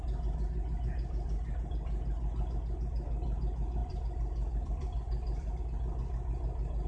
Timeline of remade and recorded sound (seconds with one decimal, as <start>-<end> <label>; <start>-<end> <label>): 0.0-3.8 recorded; 3.8-5.6 remade; 5.6-6.9 recorded